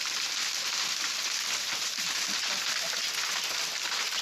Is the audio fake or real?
real